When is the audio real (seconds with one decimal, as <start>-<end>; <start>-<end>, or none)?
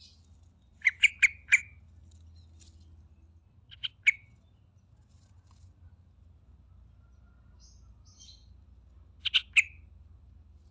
0.0-0.7; 1.8-10.7